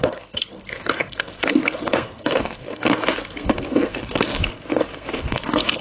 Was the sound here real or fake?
fake